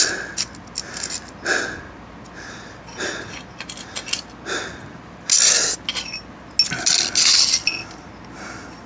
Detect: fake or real real